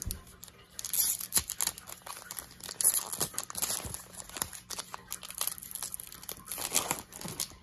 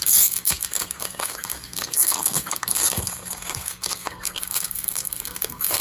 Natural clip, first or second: first